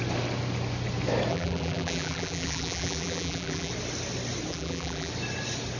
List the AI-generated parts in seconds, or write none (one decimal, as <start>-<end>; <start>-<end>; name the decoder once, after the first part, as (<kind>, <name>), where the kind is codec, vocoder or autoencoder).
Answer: 1.3-3.7 (vocoder, BigVGAN v2); 4.5-5.1